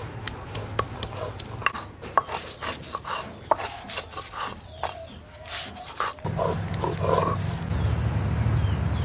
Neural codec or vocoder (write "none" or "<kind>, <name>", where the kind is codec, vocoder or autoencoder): none